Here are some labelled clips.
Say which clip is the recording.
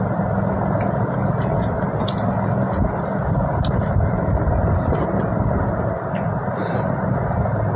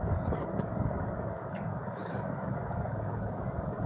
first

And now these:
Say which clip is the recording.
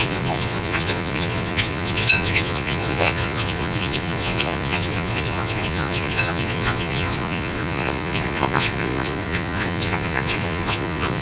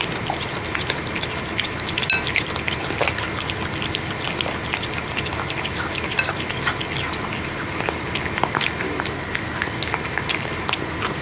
second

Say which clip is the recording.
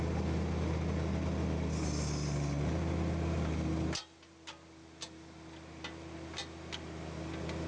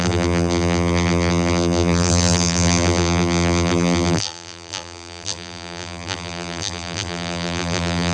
first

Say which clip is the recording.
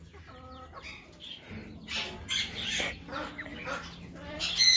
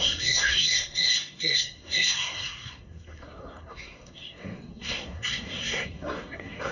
first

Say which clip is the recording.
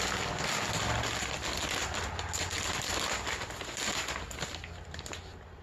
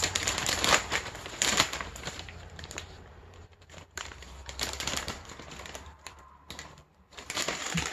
first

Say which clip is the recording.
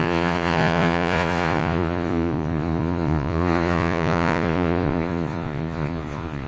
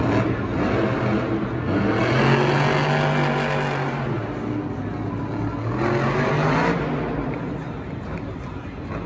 second